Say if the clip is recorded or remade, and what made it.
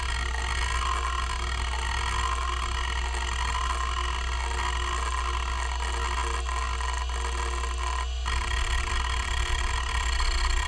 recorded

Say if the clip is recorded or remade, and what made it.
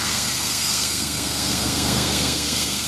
remade, codec, SNAC